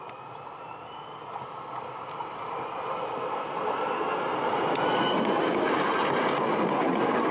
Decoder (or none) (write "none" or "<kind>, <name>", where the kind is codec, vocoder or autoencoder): none